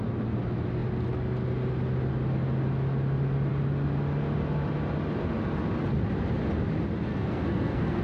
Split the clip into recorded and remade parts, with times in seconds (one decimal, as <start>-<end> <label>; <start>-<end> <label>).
0.0-7.1 recorded; 7.1-8.0 remade